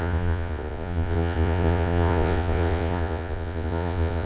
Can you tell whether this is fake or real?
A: fake